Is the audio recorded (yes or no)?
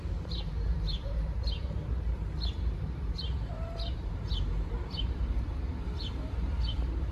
no